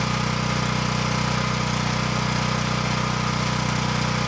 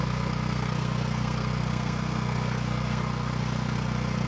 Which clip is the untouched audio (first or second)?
first